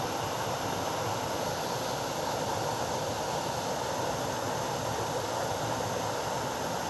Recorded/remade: recorded